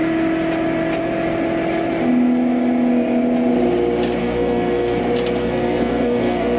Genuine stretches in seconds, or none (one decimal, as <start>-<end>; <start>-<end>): 0.0-4.2; 5.0-5.4